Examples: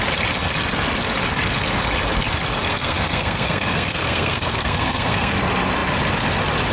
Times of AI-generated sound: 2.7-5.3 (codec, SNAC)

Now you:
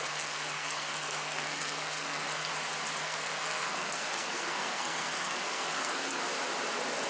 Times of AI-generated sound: 0.0-2.5 (codec, SNAC); 3.0-6.2

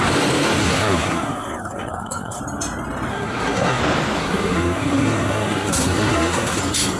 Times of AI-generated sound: 0.6-2.4 (codec, SNAC); 3.1-3.8; 4.2-6.6

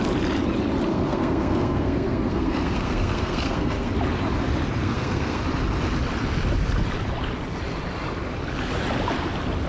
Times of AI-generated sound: 0.9-3.9 (codec, SNAC); 4.8-5.4

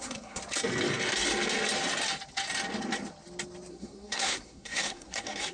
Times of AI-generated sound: 0.0-0.4 (codec, SNAC); 3.7-5.5

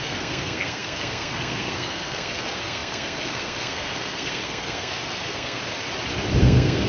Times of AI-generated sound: 0.0-5.6 (codec, SNAC); 6.4-6.9

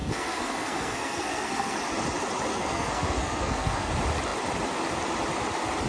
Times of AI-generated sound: 0.0-1.8 (codec, SNAC); 2.5-3.9